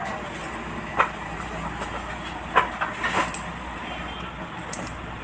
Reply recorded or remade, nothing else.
recorded